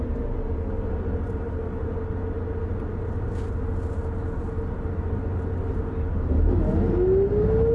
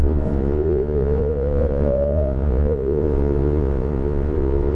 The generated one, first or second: second